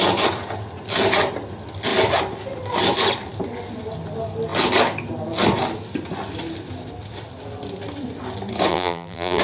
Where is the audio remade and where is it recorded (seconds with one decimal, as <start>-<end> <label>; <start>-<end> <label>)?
0.0-8.7 recorded; 8.7-9.4 remade